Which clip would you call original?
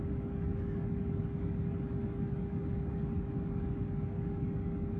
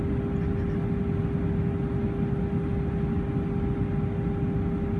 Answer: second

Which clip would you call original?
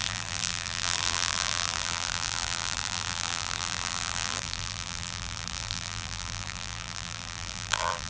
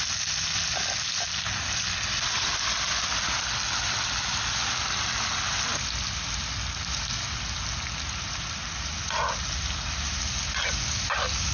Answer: second